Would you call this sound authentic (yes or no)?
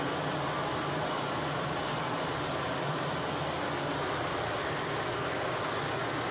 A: yes